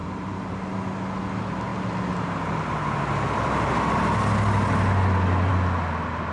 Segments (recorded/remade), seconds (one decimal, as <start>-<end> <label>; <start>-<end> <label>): 0.0-0.6 remade; 0.6-6.3 recorded